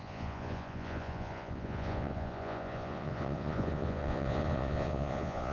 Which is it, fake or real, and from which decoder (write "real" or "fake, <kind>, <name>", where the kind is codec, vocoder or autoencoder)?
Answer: fake, vocoder, Vocos